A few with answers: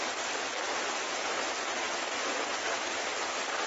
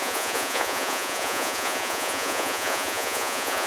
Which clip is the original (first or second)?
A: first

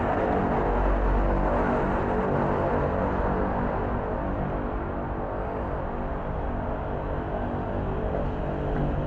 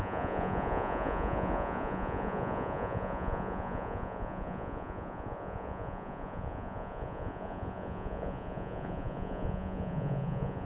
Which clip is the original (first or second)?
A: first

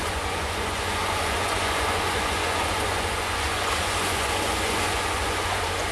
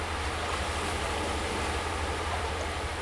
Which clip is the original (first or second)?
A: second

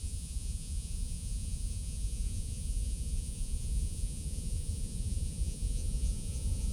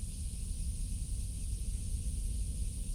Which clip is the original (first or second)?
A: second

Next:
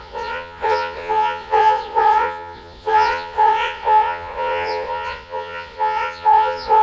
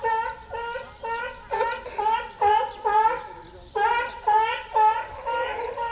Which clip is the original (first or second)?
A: second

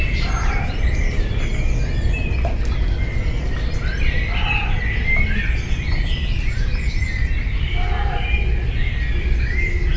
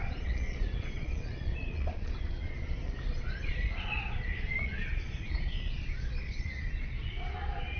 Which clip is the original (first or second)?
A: first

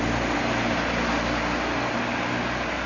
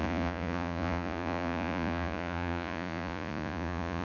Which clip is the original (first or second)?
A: first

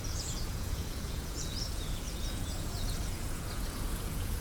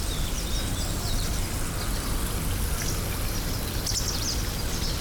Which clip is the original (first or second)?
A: second